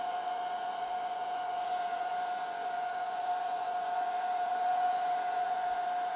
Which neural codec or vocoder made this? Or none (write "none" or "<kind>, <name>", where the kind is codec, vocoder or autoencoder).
vocoder, Vocos